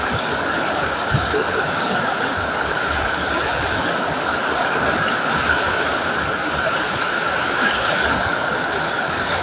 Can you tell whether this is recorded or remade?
remade